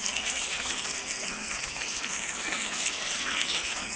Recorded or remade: remade